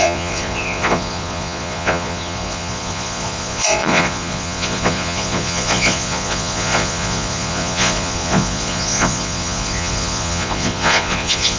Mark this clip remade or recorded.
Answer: remade